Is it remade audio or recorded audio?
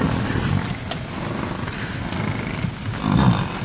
recorded